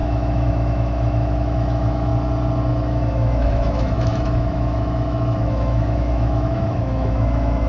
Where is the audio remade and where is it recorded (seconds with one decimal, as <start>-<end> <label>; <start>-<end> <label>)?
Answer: 0.0-2.1 remade; 2.1-2.7 recorded; 2.7-7.7 remade

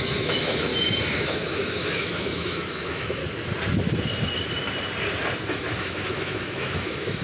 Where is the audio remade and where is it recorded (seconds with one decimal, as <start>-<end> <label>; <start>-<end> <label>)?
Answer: 0.0-0.7 remade; 0.7-1.2 recorded; 1.2-3.2 remade; 3.2-5.5 recorded; 5.5-7.2 remade

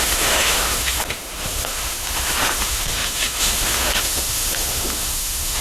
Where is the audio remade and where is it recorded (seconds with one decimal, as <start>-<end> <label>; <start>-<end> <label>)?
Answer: 0.0-5.6 remade